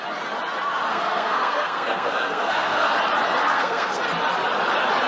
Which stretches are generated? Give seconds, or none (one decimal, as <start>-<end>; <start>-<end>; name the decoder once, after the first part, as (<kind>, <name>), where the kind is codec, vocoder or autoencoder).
0.9-2.9 (codec, SNAC); 3.4-4.0